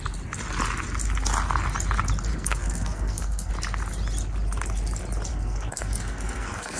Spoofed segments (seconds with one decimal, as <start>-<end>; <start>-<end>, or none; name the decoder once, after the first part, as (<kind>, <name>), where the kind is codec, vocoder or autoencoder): 2.3-3.5 (codec, SNAC); 5.3-6.8